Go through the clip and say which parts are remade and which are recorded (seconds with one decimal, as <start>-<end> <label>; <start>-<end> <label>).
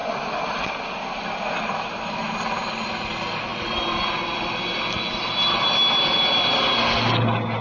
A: 0.0-7.6 recorded